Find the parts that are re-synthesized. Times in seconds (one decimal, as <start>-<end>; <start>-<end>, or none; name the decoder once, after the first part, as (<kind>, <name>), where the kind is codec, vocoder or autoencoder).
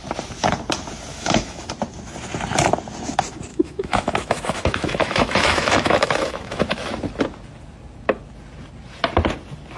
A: 1.1-1.7 (autoencoder, DAC-VAE); 3.5-6.6